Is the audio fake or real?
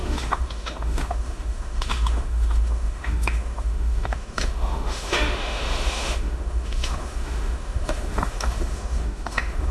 fake